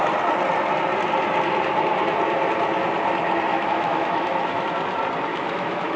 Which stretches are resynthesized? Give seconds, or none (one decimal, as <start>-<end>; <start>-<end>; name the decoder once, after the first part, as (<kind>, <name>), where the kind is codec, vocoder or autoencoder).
3.5-4.7 (autoencoder, DAC-VAE); 5.3-6.0